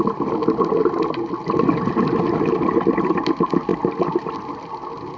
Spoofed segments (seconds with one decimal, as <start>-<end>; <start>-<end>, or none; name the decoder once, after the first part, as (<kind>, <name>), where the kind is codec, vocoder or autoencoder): none